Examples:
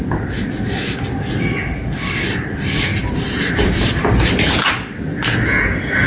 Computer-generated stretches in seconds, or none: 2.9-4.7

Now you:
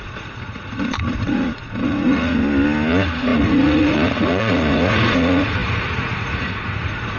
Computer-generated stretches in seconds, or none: 0.0-2.3; 2.9-7.2

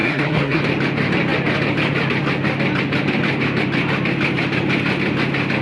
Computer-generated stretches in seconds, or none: 0.0-0.6

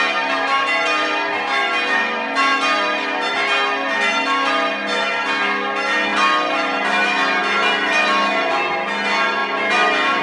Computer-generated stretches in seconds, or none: none

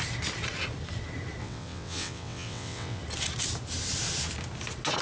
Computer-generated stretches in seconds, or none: 1.4-3.0